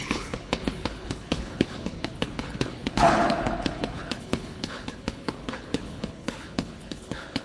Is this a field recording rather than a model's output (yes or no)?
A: no